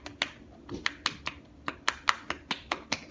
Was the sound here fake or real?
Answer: real